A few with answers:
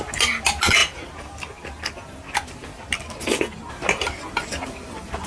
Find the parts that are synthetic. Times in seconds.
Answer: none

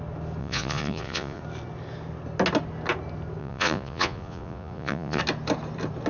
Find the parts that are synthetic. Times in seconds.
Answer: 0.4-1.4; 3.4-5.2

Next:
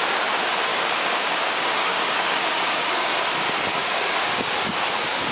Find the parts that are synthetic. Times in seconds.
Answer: 0.7-3.1; 3.8-4.5

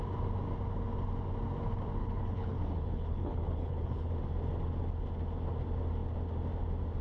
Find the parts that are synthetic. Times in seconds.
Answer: 2.0-4.1

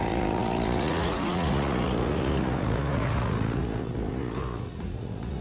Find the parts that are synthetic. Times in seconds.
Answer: 0.0-5.4